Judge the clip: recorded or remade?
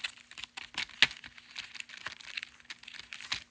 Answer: recorded